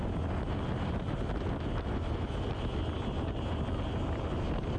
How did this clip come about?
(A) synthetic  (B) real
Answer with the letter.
B